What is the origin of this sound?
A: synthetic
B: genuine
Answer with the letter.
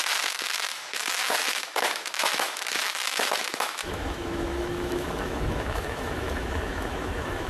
A